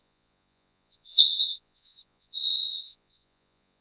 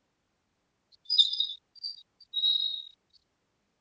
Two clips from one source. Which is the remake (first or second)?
first